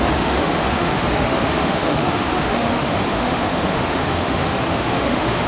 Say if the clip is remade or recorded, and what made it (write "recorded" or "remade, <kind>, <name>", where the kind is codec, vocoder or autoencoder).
remade, autoencoder, DAC-VAE